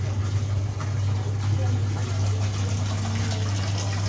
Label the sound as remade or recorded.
recorded